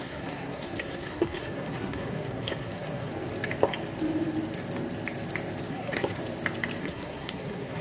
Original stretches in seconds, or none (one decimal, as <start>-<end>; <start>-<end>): 3.1-5.7; 6.2-6.8